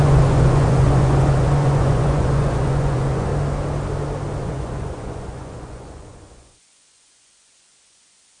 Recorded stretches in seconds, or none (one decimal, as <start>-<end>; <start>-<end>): 3.3-4.4